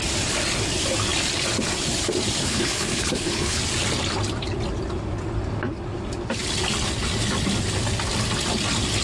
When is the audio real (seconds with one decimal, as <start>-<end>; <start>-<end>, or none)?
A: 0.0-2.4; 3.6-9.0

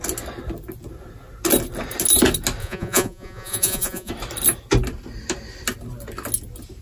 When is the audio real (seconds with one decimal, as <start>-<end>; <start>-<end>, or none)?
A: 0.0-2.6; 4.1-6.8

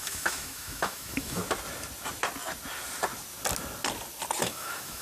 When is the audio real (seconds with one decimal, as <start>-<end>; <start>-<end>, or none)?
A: 1.4-4.4

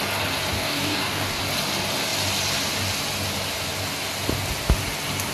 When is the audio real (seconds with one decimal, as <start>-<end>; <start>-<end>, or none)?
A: 0.0-0.5; 1.4-5.3

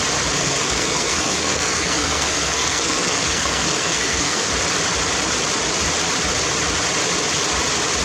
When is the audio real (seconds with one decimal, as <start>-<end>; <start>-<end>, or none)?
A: 0.0-0.4; 4.5-8.0

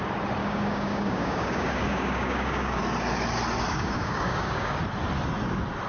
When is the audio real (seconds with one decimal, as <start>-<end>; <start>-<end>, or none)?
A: 0.0-0.4; 2.8-3.7; 4.8-5.9

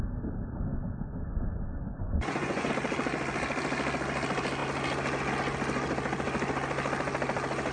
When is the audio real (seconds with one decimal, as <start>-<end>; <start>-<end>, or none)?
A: 0.0-0.7; 2.7-7.7